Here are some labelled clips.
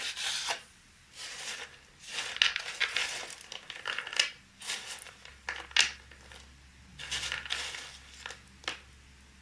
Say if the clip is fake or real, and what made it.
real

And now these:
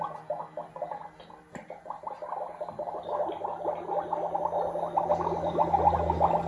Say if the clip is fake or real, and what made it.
real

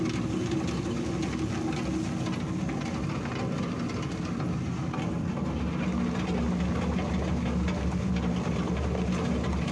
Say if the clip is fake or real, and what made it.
real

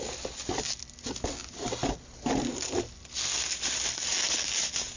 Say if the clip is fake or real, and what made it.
real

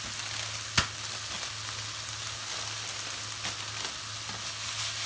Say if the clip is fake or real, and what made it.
real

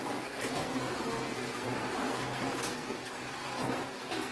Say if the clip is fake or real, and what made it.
fake, codec, SNAC